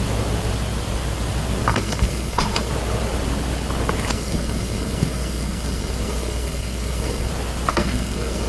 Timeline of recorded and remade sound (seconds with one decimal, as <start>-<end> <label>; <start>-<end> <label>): 0.0-1.7 recorded; 1.7-2.7 remade; 2.7-4.1 recorded; 4.1-7.3 remade; 7.3-7.7 recorded; 7.7-8.5 remade